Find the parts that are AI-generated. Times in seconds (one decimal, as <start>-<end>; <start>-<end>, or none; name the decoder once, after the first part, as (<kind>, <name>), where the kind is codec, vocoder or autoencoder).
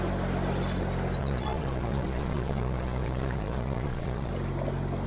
1.2-4.3 (vocoder, Vocos)